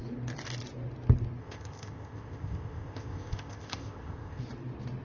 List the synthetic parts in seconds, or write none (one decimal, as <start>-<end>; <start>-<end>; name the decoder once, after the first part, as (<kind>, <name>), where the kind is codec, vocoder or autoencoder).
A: 1.4-4.4 (codec, ZipCodec)